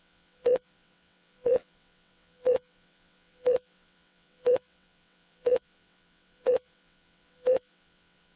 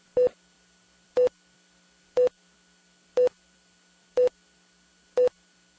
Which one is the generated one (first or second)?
first